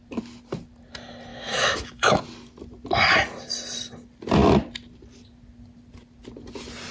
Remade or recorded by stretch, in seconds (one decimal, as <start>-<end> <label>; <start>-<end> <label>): 0.0-1.3 recorded; 1.3-2.2 remade; 2.2-6.9 recorded